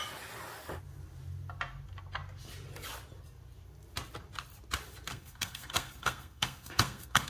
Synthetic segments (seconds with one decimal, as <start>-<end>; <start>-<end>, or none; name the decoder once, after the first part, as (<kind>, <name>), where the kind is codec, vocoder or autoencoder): 5.1-7.3 (codec, SNAC)